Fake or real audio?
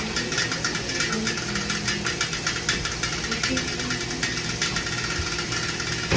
real